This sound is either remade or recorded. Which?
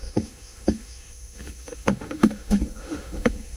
remade